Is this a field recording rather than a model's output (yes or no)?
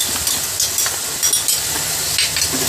yes